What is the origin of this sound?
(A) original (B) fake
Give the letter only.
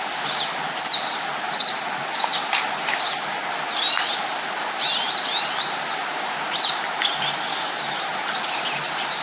A